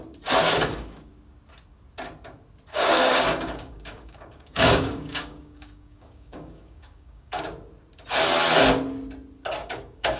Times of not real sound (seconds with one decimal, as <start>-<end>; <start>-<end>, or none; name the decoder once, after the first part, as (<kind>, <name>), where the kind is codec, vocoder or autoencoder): 0.4-1.1 (codec, DAC); 2.7-7.4; 9.6-10.2